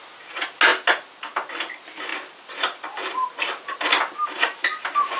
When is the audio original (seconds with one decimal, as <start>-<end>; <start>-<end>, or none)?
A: 0.0-5.2